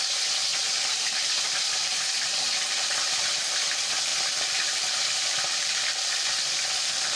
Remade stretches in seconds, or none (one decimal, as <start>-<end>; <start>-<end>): 0.5-2.1; 4.1-6.7